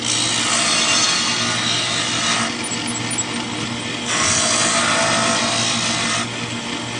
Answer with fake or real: real